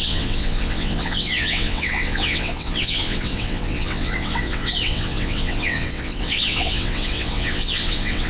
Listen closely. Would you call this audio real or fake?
fake